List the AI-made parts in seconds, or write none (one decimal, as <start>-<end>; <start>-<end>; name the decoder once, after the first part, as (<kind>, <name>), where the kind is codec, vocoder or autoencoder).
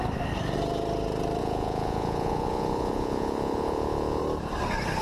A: 1.4-4.2 (vocoder, Vocos)